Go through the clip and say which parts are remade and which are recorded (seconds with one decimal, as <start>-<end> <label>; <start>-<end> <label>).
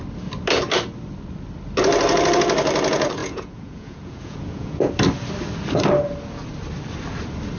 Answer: 0.0-3.2 recorded; 3.2-4.9 remade; 4.9-7.6 recorded